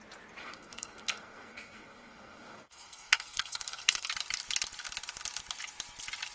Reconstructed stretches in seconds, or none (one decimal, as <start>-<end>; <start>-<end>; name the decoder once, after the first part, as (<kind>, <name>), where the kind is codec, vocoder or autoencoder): 0.4-4.1 (codec, SNAC)